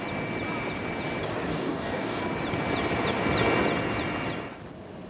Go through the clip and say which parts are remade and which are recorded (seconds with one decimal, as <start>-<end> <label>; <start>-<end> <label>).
0.0-1.5 recorded; 1.5-2.2 remade; 2.2-5.1 recorded